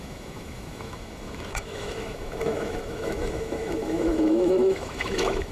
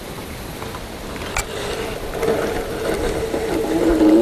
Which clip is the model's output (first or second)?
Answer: first